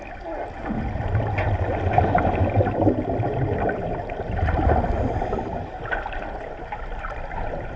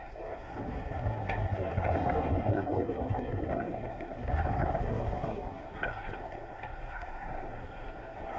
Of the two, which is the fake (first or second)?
second